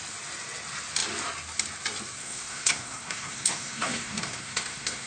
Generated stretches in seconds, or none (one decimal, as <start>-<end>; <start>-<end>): 2.2-5.1